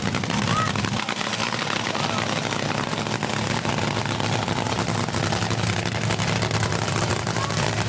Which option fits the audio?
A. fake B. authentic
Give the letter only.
B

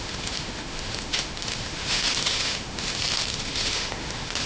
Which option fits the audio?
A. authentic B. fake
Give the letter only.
B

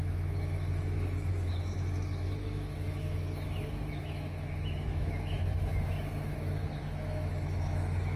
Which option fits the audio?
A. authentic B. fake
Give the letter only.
B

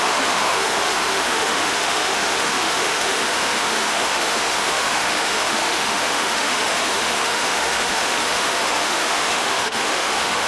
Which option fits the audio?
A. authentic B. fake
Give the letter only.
B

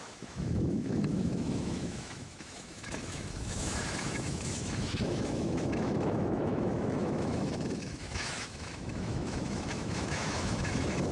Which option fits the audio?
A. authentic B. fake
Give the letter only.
B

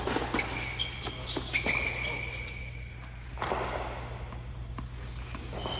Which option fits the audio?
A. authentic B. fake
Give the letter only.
A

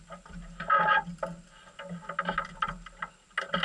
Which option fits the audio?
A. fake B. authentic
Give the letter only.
B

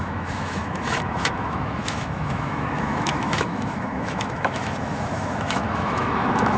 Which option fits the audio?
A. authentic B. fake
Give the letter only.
B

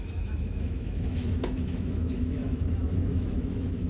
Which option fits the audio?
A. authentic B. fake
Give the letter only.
B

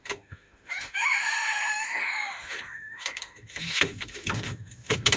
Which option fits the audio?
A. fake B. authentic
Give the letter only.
A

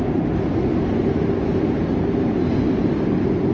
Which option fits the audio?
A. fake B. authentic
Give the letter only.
B